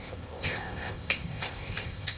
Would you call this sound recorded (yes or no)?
no